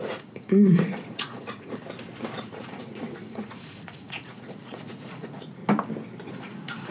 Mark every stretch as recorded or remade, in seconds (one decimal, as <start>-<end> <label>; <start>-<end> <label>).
0.0-1.8 remade; 1.8-2.4 recorded; 2.4-5.6 remade; 5.6-6.3 recorded; 6.3-6.9 remade